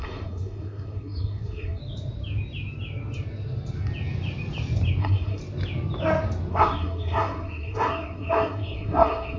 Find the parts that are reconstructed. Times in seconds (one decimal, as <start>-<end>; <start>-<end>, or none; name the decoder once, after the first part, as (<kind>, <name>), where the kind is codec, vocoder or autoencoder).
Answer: 0.0-1.8 (codec, SNAC); 5.0-5.4; 6.5-9.4